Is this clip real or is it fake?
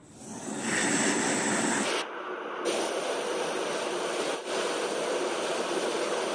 real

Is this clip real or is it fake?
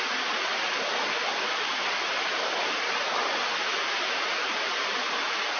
real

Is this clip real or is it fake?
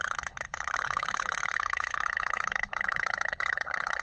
fake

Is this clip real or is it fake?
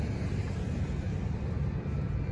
real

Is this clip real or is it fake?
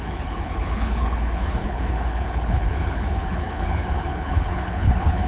fake